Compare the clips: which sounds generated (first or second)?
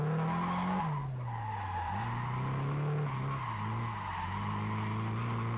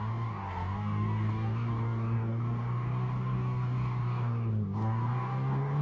second